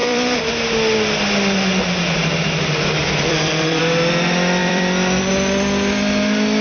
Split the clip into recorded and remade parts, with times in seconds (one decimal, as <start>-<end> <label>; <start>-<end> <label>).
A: 0.0-0.6 remade; 0.6-3.0 recorded; 3.0-3.8 remade; 3.8-4.6 recorded; 4.6-5.3 remade; 5.3-6.6 recorded